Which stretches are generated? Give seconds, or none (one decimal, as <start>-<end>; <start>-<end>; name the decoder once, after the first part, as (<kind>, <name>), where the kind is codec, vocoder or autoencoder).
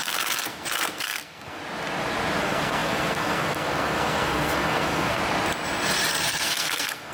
0.0-1.6 (codec, SNAC); 2.4-5.2; 6.1-7.1